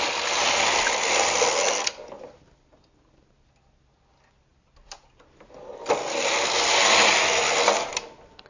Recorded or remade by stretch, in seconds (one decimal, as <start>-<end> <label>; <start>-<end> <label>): 0.0-8.5 recorded

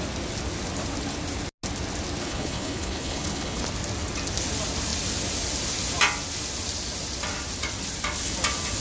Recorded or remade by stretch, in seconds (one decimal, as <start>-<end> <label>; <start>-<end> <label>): 0.0-2.2 recorded; 2.2-3.6 remade; 3.6-8.8 recorded

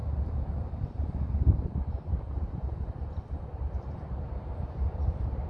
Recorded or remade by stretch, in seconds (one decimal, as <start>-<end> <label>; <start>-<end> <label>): 0.0-3.3 recorded; 3.3-5.5 remade

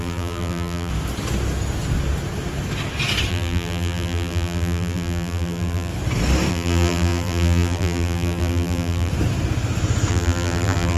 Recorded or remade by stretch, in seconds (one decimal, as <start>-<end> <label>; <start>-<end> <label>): 0.0-0.9 remade; 0.9-3.3 recorded; 3.3-5.9 remade; 5.9-6.5 recorded; 6.5-9.1 remade; 9.1-10.1 recorded; 10.1-11.0 remade

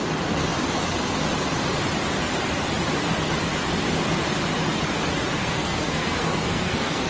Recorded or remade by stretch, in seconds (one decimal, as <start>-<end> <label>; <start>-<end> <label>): 0.0-5.4 recorded; 5.4-7.1 remade

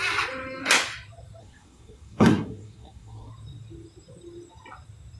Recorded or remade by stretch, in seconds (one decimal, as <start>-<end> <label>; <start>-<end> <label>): 0.0-1.4 recorded; 1.4-3.3 remade; 3.3-5.2 recorded